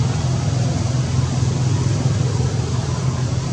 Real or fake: real